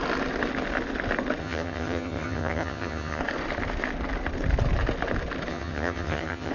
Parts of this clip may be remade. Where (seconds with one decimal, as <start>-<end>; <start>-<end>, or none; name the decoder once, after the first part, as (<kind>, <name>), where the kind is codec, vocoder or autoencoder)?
1.4-3.2 (vocoder, HiFi-GAN); 5.5-6.5